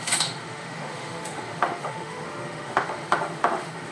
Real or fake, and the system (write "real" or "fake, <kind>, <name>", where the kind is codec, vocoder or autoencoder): fake, autoencoder, DAC-VAE